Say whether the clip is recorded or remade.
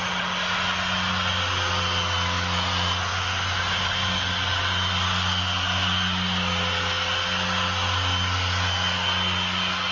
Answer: recorded